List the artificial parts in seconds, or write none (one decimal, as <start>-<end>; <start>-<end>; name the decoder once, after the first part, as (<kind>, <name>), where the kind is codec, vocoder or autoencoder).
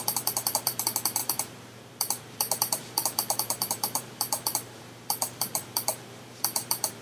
0.0-7.0 (vocoder, BigVGAN v2)